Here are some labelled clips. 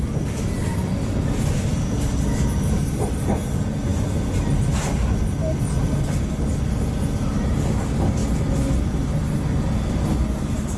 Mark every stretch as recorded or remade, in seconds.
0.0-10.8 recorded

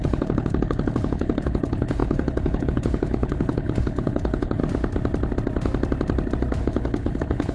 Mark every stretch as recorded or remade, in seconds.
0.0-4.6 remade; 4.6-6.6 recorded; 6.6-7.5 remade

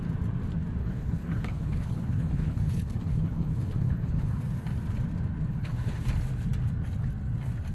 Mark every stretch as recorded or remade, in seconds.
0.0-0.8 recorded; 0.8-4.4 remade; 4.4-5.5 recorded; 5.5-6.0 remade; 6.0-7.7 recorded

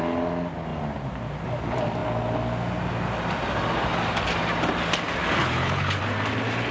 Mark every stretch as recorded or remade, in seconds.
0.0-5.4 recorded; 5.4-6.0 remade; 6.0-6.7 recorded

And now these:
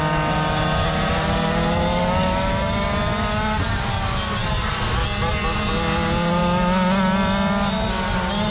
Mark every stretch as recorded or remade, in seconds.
0.0-8.5 recorded

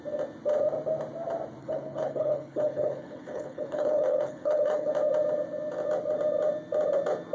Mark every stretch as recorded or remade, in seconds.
0.0-1.6 recorded; 1.6-4.9 remade; 4.9-7.3 recorded